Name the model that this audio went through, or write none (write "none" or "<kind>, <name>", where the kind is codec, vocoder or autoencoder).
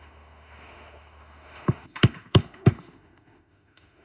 autoencoder, DAC-VAE